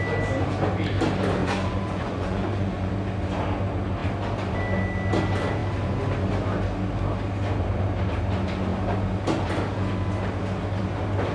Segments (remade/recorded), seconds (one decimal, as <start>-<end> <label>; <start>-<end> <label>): 0.0-1.4 recorded; 1.4-2.9 remade; 2.9-11.3 recorded